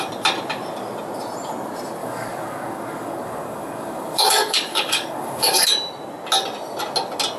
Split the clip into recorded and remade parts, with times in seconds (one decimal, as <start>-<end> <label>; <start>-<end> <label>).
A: 0.0-2.0 recorded; 2.0-5.7 remade; 5.7-7.4 recorded